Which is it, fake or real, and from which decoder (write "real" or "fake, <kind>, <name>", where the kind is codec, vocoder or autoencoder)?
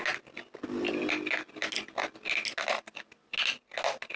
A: real